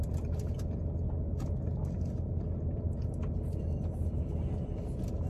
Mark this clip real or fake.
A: real